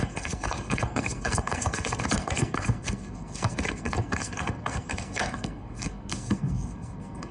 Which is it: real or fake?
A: fake